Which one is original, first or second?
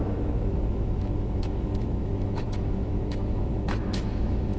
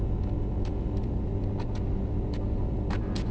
second